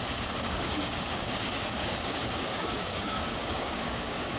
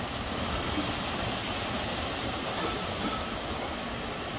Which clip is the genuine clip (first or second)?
second